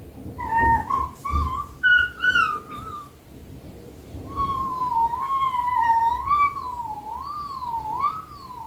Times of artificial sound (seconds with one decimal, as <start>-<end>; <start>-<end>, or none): none